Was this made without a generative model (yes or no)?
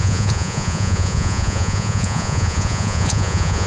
no